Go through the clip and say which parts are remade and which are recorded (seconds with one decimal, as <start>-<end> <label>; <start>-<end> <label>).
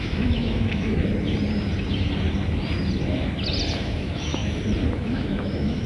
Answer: 0.0-1.1 remade; 1.1-3.8 recorded; 3.8-4.4 remade; 4.4-4.9 recorded; 4.9-5.9 remade